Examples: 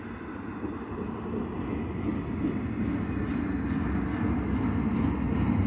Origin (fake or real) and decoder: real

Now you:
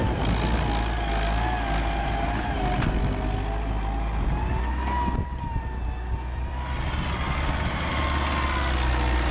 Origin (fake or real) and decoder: real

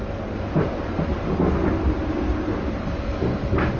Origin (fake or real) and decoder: real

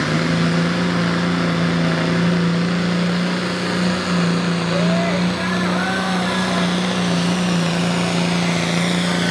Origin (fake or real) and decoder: real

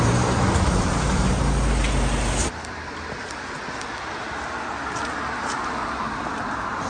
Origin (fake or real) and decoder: real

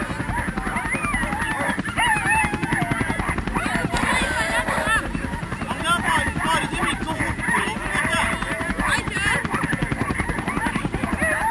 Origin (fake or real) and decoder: real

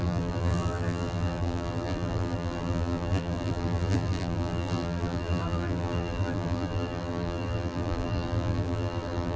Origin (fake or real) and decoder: fake, vocoder, BigVGAN v2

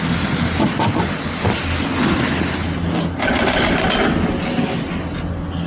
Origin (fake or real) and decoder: real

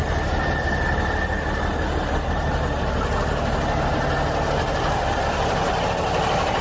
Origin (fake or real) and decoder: real